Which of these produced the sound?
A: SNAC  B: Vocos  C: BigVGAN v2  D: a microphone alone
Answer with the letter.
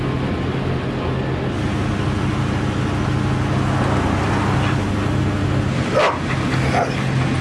D